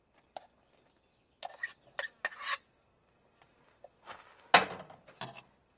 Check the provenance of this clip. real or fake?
real